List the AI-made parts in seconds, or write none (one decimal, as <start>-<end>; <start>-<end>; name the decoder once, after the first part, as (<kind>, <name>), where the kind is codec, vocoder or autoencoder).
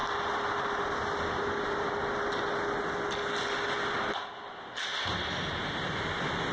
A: none